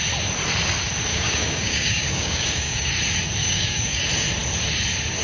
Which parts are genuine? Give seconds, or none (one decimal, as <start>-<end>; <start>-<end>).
0.0-1.1; 2.9-3.4; 4.0-5.2